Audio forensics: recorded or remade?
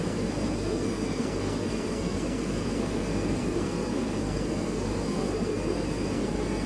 remade